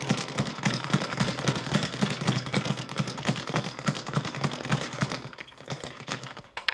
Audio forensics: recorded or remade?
remade